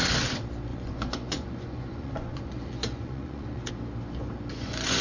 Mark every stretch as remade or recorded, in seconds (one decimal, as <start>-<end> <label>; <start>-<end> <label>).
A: 0.0-0.7 recorded; 0.7-3.7 remade; 3.7-4.5 recorded; 4.5-5.0 remade